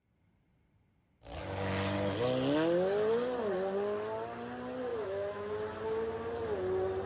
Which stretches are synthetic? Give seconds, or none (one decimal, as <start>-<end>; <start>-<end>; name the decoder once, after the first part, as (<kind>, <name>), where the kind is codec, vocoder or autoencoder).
4.9-5.5 (autoencoder, DAC-VAE)